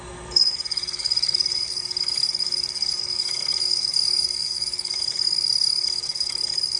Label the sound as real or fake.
fake